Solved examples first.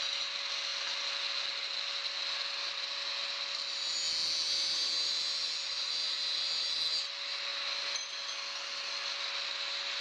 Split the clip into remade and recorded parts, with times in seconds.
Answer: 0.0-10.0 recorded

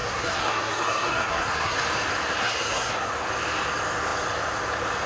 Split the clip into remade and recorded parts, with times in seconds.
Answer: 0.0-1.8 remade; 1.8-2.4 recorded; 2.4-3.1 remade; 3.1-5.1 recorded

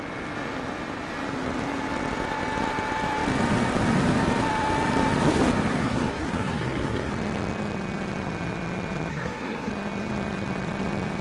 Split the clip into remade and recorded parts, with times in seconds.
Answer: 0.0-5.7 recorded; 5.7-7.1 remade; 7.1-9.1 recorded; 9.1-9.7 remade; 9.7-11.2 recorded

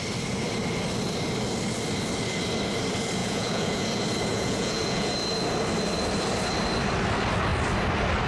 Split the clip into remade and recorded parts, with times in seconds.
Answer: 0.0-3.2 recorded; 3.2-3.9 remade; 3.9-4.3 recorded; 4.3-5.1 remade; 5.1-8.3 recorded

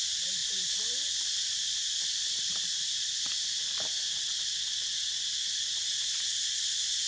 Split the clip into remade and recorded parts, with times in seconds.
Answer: 0.0-0.4 recorded; 0.4-3.6 remade; 3.6-7.1 recorded

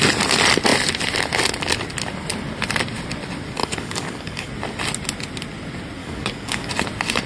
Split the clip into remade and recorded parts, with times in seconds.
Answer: 0.0-3.6 recorded; 3.6-4.5 remade; 4.5-6.0 recorded; 6.0-6.7 remade; 6.7-7.3 recorded

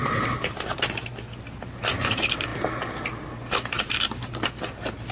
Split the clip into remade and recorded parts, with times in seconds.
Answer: 0.0-5.1 recorded

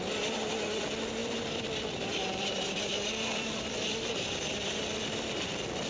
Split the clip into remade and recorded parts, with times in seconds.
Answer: 0.0-5.9 remade